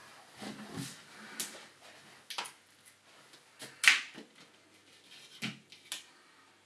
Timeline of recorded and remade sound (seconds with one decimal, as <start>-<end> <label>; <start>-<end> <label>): 0.0-6.7 recorded